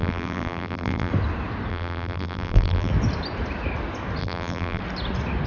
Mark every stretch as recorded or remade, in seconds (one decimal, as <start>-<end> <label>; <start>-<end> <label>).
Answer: 0.0-1.1 remade; 1.1-1.7 recorded; 1.7-2.9 remade; 2.9-4.2 recorded; 4.2-4.8 remade; 4.8-5.5 recorded